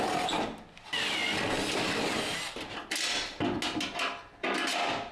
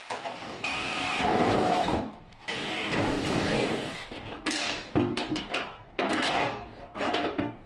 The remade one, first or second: second